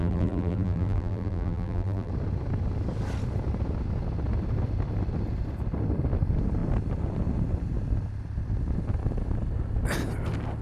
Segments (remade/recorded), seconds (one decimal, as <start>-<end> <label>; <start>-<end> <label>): 0.0-2.1 remade; 2.1-10.6 recorded